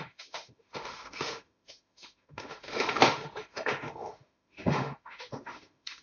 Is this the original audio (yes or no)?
no